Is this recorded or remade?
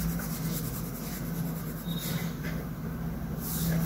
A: recorded